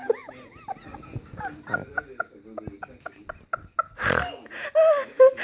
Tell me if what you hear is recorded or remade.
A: recorded